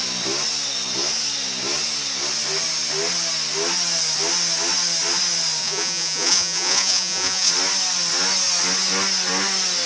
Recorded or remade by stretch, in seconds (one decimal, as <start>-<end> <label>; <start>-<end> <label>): 0.0-5.6 recorded; 5.6-7.5 remade; 7.5-9.9 recorded